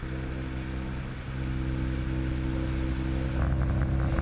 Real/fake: real